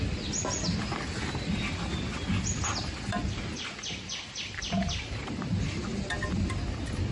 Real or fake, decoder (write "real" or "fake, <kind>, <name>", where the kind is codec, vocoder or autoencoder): real